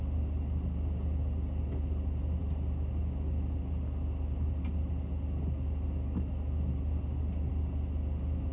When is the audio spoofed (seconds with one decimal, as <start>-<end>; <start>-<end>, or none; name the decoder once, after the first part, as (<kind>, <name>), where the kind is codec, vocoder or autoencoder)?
none